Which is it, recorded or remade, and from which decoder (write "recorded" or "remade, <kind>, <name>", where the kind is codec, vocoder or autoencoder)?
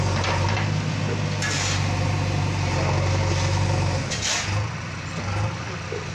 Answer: recorded